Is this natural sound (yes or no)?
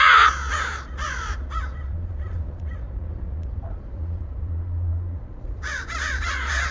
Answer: no